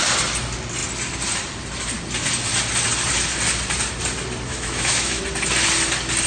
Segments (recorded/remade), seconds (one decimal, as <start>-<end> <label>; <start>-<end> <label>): 0.0-4.5 recorded; 4.5-5.2 remade; 5.2-6.3 recorded